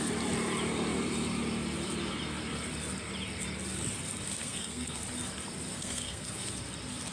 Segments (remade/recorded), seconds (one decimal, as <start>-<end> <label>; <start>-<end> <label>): 0.0-4.4 recorded; 4.4-5.0 remade; 5.0-5.7 recorded; 5.7-6.5 remade; 6.5-7.1 recorded